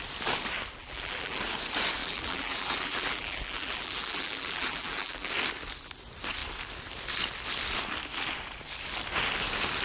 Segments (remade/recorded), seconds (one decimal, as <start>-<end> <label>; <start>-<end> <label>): 0.0-0.8 recorded; 0.8-1.4 remade; 1.4-2.0 recorded; 2.0-5.3 remade; 5.3-9.8 recorded